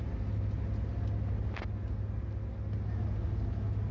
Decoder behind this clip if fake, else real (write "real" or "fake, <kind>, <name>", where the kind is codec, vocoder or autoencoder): real